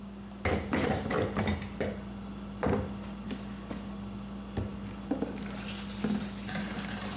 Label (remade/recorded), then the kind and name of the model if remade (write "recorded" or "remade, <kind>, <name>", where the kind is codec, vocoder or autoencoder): recorded